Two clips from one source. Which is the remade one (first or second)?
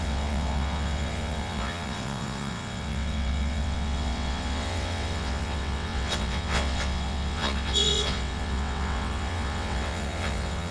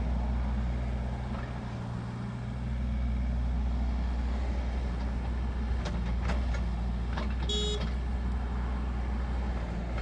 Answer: first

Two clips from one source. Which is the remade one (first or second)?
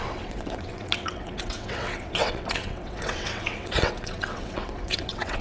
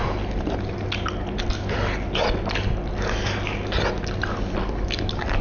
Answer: first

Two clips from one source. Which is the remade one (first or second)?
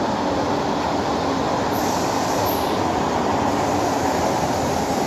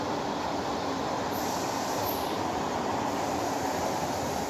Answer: second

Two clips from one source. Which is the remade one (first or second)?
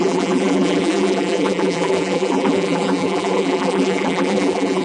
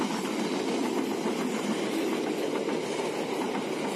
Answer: first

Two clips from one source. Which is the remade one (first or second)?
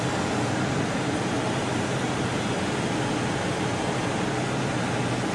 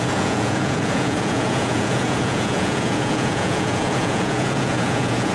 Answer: second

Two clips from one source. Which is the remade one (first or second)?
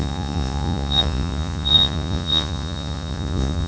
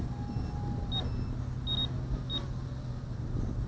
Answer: first